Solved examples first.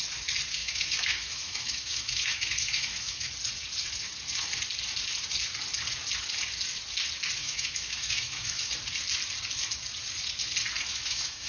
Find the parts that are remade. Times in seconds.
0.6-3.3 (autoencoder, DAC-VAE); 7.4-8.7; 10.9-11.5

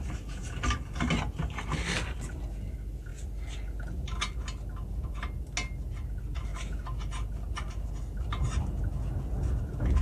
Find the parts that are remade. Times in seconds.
none